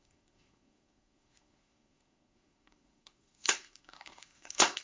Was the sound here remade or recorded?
remade